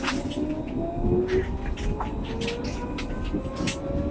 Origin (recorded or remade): recorded